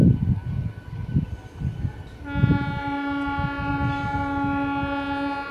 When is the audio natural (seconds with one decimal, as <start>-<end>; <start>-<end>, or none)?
0.0-5.5